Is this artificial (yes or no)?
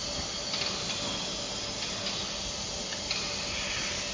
no